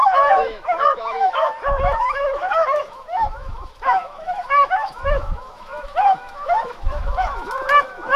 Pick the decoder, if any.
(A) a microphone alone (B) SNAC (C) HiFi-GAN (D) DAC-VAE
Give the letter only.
D